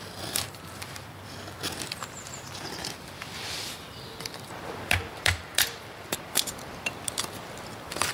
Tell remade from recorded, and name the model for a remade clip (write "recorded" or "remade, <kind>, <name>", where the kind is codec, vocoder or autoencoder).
remade, vocoder, BigVGAN v2